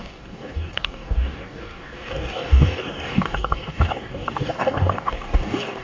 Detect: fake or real fake